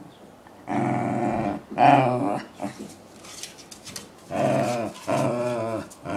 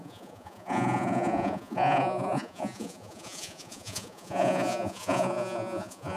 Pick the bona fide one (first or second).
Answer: first